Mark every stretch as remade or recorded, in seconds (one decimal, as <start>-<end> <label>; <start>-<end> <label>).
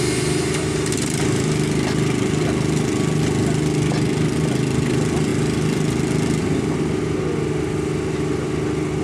0.0-9.0 recorded